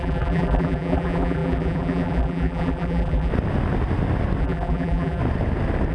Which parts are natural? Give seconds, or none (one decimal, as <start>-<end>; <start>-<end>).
3.3-4.4; 5.2-5.9

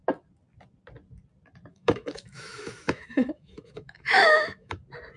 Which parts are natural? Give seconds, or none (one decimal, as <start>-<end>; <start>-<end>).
0.0-1.7; 4.8-5.2